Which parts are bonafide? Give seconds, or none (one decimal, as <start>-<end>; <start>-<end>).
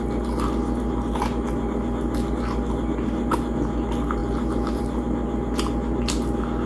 0.0-6.7